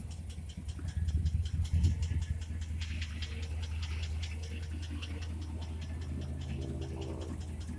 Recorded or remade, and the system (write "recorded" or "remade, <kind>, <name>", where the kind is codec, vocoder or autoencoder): recorded